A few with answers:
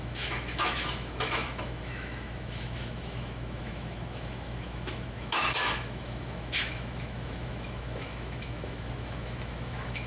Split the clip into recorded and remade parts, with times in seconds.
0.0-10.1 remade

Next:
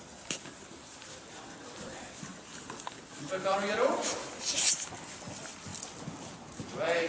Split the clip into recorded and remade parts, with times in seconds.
0.0-7.1 recorded

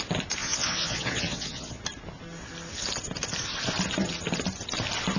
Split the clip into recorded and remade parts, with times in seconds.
0.0-0.4 recorded; 0.4-1.8 remade; 1.8-5.2 recorded

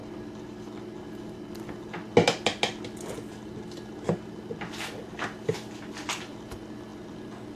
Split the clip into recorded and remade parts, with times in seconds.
0.0-7.6 recorded

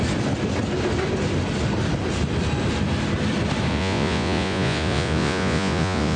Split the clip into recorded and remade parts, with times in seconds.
0.0-3.7 recorded; 3.7-6.2 remade

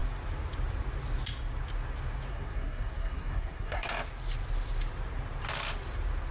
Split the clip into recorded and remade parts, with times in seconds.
0.0-2.3 recorded; 2.3-3.9 remade; 3.9-6.3 recorded

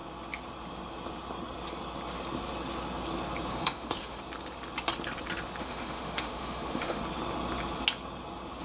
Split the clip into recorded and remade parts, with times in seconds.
0.0-3.5 recorded; 3.5-4.2 remade; 4.2-5.6 recorded; 5.6-7.0 remade; 7.0-8.6 recorded

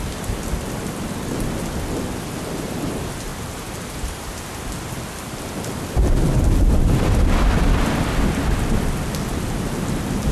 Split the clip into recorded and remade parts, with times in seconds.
0.0-3.3 recorded; 3.3-4.4 remade; 4.4-10.3 recorded